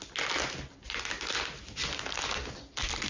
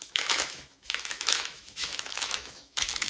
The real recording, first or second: first